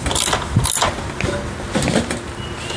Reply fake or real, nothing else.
real